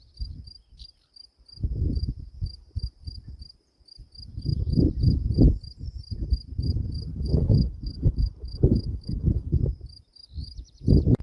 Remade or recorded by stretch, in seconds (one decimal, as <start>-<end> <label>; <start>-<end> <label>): 0.0-7.1 recorded; 7.1-9.6 remade; 9.6-11.2 recorded